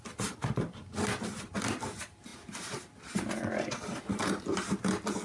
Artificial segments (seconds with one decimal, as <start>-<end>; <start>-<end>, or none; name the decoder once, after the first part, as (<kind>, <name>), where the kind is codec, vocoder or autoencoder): none